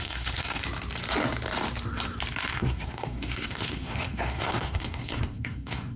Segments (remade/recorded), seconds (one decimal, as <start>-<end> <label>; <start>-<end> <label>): 0.0-0.6 remade; 0.6-2.5 recorded; 2.5-6.0 remade